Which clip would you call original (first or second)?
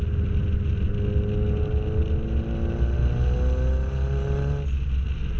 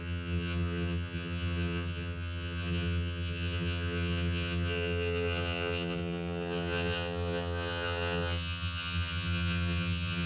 first